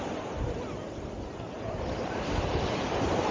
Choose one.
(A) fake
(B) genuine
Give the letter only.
A